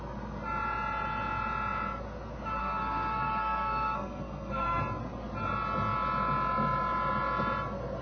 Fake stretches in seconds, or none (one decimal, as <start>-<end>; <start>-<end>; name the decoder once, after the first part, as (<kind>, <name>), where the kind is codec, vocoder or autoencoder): 2.6-4.8 (codec, SNAC)